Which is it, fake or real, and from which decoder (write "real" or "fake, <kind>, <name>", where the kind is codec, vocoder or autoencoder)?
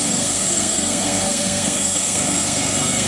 fake, codec, SNAC